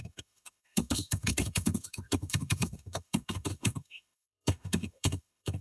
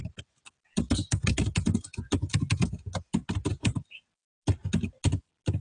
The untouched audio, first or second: second